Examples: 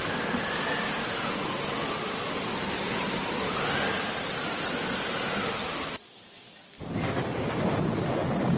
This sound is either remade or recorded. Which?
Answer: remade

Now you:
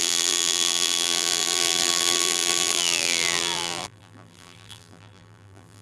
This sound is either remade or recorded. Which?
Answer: remade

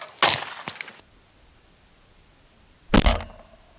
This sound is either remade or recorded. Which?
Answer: recorded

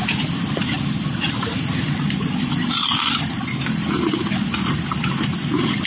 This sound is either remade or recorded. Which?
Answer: remade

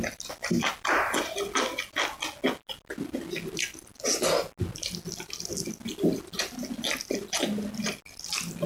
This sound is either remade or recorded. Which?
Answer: recorded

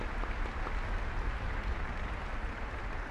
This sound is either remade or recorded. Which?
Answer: recorded